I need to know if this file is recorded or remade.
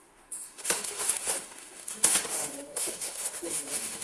remade